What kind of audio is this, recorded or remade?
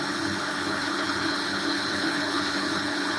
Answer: remade